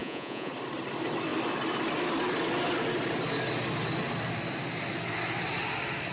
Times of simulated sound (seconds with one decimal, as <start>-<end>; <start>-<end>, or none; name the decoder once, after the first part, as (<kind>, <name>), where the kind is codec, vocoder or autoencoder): 0.0-0.5 (vocoder, Vocos)